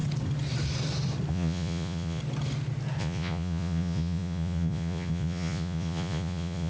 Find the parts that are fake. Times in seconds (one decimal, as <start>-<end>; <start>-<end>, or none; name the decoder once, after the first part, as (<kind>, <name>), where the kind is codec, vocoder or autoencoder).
1.3-2.2 (vocoder, Vocos); 3.0-6.7